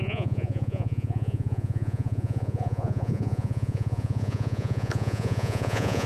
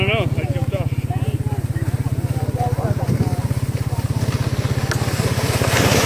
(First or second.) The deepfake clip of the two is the first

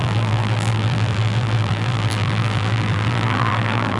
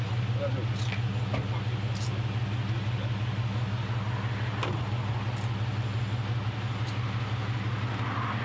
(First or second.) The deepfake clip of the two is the first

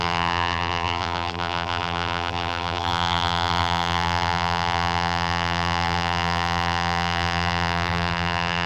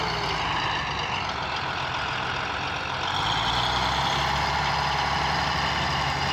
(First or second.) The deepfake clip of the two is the first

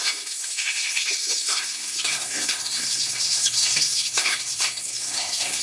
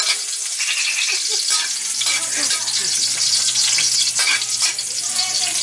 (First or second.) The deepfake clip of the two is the first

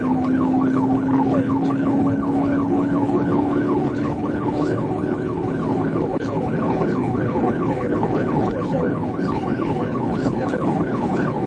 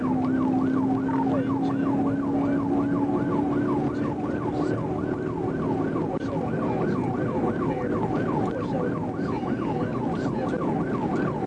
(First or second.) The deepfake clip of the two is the first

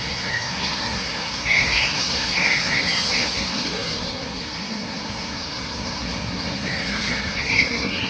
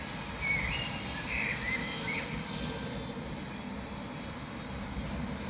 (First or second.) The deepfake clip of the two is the first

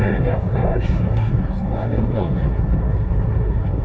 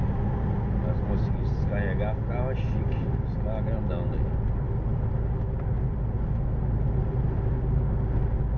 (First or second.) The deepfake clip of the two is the first